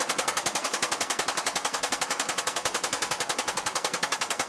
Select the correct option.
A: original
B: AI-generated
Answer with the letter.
B